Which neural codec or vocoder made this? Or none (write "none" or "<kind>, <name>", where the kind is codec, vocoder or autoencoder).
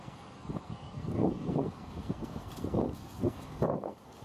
codec, SNAC